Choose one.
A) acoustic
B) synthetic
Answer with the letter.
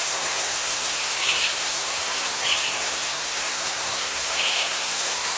B